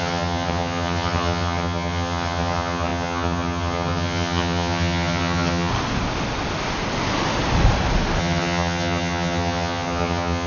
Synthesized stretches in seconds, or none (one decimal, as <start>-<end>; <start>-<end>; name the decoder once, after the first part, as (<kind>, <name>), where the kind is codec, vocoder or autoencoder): 0.0-5.7 (vocoder, HiFi-GAN); 8.2-10.5